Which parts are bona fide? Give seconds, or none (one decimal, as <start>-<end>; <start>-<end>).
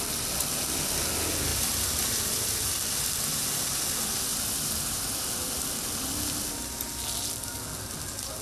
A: 0.0-1.5; 3.2-4.3; 5.8-8.4